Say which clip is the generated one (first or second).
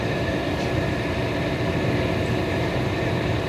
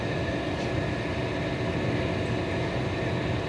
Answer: first